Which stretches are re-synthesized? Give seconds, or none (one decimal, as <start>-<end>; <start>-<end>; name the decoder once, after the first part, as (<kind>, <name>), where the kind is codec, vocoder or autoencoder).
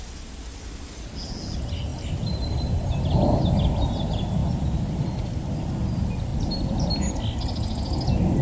4.4-5.6 (vocoder, BigVGAN v2); 6.3-7.1